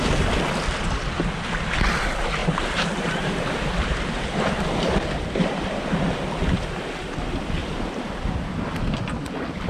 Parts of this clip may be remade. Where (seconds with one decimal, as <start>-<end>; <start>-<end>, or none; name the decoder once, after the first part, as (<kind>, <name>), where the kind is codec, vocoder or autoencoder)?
2.4-6.3 (vocoder, BigVGAN v2); 7.6-8.2